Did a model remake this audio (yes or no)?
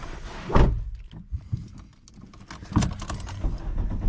no